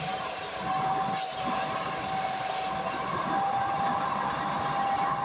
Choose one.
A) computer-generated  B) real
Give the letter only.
B